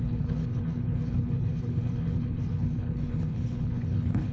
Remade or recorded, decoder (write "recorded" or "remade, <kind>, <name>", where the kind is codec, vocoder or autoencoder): remade, codec, HILCodec